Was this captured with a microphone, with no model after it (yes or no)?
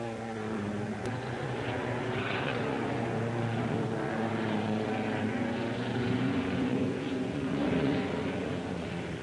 no